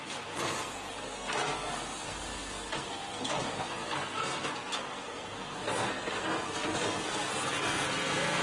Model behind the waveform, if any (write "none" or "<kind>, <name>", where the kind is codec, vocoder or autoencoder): codec, SNAC